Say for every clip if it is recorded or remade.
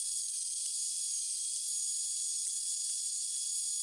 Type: recorded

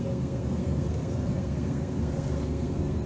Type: remade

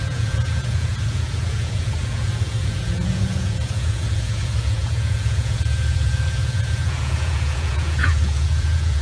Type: remade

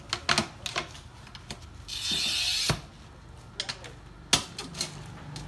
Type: recorded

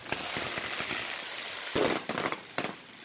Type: recorded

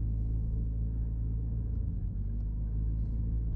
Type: remade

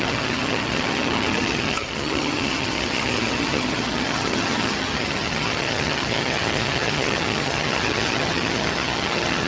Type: remade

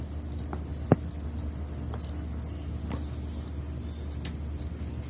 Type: recorded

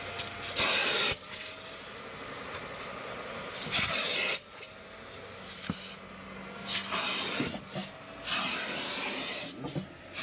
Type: recorded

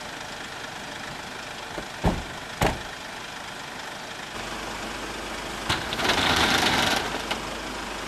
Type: recorded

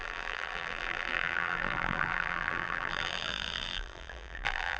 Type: remade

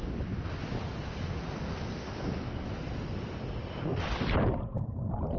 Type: recorded